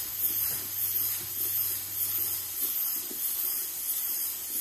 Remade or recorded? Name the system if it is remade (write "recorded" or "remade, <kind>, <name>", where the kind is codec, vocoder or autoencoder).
recorded